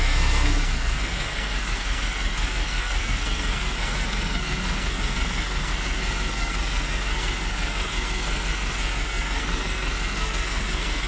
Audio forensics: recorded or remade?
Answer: remade